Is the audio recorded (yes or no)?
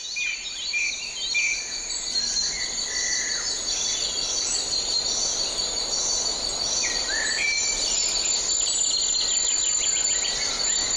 yes